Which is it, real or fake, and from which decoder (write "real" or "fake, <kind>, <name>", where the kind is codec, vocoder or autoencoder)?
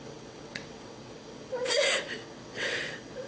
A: fake, vocoder, WaveNeXt